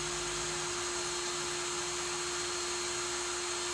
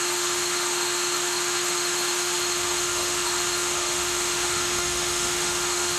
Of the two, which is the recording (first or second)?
first